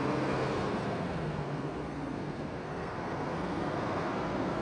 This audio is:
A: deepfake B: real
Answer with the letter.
A